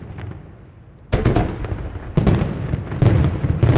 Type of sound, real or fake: real